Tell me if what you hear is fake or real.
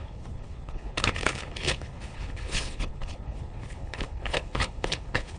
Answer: fake